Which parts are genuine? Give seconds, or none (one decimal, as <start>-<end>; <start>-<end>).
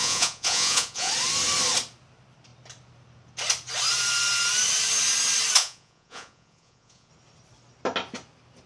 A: 1.1-5.6; 7.1-8.7